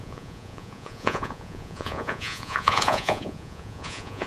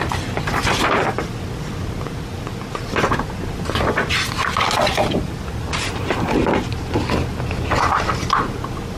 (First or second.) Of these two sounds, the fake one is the first